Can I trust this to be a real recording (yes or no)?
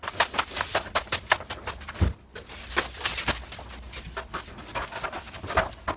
yes